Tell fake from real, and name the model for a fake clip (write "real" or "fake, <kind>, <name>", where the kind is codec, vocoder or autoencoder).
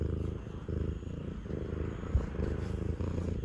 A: real